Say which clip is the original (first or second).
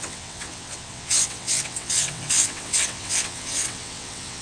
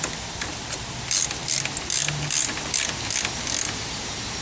second